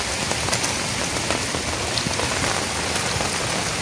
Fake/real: real